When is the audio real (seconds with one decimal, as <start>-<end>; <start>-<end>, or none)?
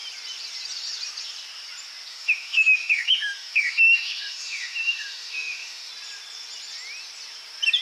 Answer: 0.0-2.1; 5.9-7.8